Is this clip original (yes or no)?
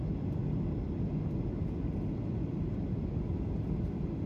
yes